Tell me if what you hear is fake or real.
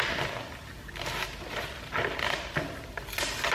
real